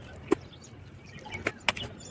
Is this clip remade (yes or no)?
no